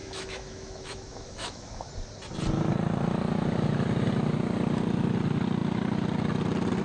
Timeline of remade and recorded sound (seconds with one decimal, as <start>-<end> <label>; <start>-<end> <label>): 0.0-1.9 remade; 1.9-6.8 recorded